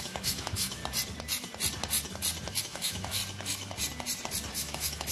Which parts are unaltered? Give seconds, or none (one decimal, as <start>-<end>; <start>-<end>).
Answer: 0.8-2.6; 3.2-4.5